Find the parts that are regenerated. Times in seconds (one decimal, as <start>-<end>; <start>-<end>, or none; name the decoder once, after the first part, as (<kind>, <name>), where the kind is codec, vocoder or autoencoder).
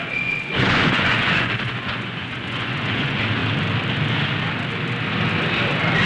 0.0-3.4 (vocoder, Vocos)